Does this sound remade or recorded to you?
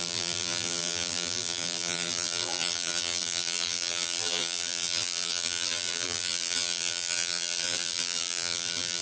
remade